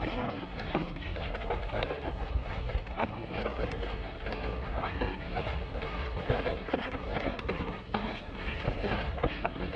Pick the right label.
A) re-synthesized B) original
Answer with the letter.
A